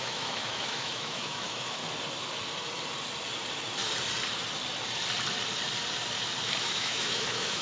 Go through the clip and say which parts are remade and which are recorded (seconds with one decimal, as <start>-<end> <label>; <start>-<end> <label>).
0.0-1.8 remade; 1.8-6.4 recorded; 6.4-7.6 remade